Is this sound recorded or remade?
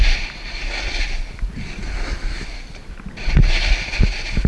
recorded